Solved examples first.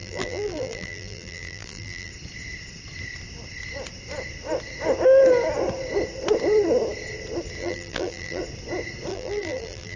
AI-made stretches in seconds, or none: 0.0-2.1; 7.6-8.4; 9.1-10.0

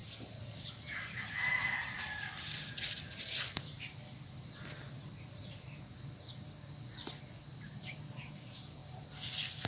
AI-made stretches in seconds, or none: none

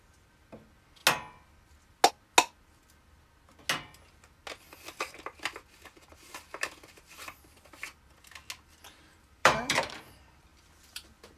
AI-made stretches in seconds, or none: 9.4-9.9; 10.5-11.4